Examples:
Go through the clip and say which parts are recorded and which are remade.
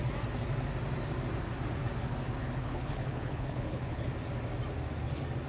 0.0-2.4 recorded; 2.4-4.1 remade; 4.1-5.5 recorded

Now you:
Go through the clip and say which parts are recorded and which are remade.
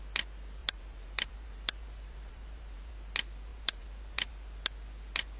0.0-0.6 recorded; 0.6-2.9 remade; 2.9-3.5 recorded; 3.5-4.3 remade; 4.3-5.4 recorded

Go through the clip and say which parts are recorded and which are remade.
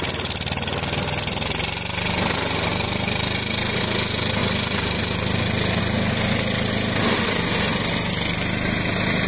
0.0-9.3 recorded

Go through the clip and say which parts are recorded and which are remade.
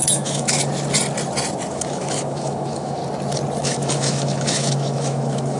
0.0-0.6 remade; 0.6-1.7 recorded; 1.7-3.0 remade; 3.0-3.6 recorded; 3.6-5.6 remade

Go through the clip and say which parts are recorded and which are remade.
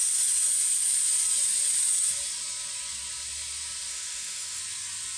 0.0-3.9 recorded; 3.9-4.6 remade; 4.6-5.2 recorded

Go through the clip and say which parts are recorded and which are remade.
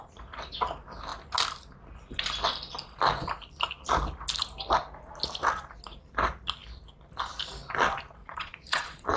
0.0-8.2 recorded; 8.2-9.2 remade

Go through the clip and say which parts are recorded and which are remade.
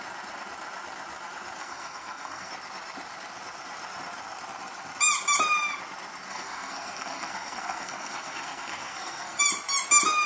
0.0-1.6 recorded; 1.6-2.5 remade; 2.5-6.3 recorded; 6.3-9.4 remade; 9.4-10.3 recorded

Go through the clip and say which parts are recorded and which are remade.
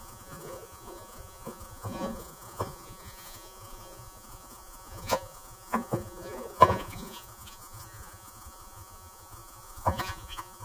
0.0-10.6 remade